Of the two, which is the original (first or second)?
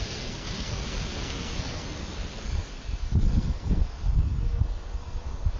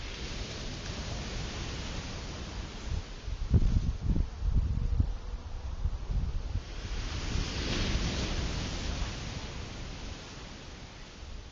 second